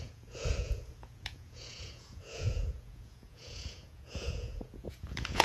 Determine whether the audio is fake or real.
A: fake